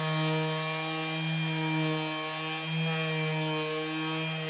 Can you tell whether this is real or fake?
real